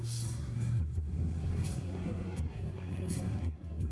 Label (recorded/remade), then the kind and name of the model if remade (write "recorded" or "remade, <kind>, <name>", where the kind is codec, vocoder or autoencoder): remade, codec, SNAC